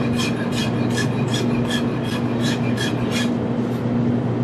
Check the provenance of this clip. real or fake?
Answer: real